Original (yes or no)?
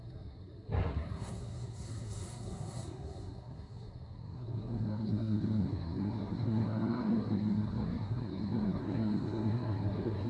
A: no